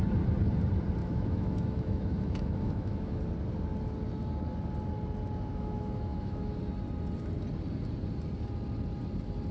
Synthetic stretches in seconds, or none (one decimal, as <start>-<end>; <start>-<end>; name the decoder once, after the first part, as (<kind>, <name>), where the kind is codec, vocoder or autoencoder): 1.0-3.2 (autoencoder, DAC-VAE); 5.5-6.6